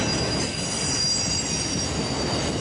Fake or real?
real